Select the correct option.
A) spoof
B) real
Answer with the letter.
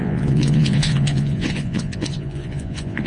A